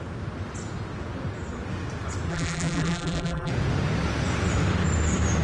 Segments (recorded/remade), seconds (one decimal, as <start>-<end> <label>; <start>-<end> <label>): 0.0-2.3 recorded; 2.3-3.5 remade; 3.5-5.4 recorded